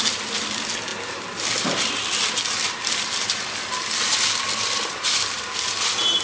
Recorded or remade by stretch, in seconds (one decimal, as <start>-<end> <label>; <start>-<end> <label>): 0.0-6.2 recorded

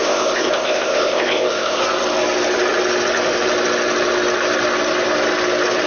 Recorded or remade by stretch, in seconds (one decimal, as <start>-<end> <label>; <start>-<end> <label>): 0.0-1.8 remade; 1.8-5.9 recorded

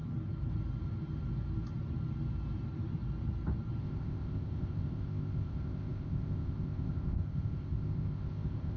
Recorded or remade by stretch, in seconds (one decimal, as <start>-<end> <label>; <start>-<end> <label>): 0.0-3.8 recorded; 3.8-8.8 remade

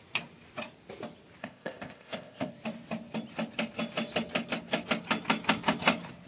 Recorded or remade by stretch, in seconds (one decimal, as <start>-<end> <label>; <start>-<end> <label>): 0.0-1.4 recorded; 1.4-2.5 remade; 2.5-6.3 recorded

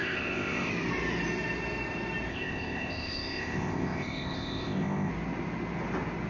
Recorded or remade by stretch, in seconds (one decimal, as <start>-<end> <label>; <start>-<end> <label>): 0.0-0.7 remade; 0.7-2.3 recorded; 2.3-5.1 remade; 5.1-6.3 recorded

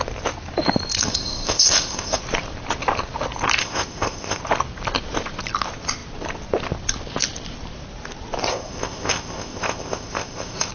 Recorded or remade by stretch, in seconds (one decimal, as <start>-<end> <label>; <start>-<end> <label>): 0.0-1.0 recorded; 1.0-2.2 remade; 2.2-3.6 recorded; 3.6-4.4 remade; 4.4-8.5 recorded; 8.5-10.7 remade

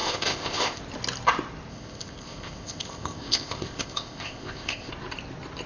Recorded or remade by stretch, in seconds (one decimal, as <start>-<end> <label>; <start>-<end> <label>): 0.0-0.8 remade; 0.8-1.7 recorded; 1.7-4.9 remade; 4.9-5.7 recorded